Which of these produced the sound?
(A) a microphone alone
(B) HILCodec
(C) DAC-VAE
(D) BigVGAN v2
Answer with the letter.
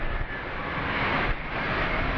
A